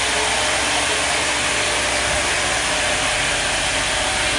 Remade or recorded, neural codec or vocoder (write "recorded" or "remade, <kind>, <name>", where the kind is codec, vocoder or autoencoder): recorded